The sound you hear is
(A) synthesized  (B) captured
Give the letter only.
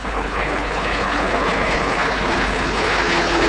A